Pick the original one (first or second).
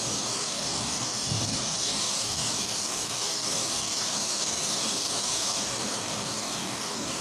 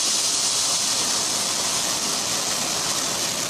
second